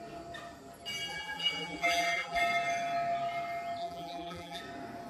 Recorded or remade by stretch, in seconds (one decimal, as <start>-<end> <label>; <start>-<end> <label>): 0.0-1.1 recorded; 1.1-2.4 remade; 2.4-3.8 recorded; 3.8-4.6 remade; 4.6-5.1 recorded